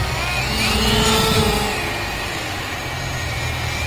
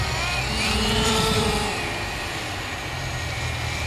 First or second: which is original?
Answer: first